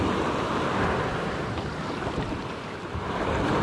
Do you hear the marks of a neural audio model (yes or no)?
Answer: no